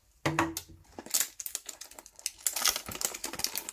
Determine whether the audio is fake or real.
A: real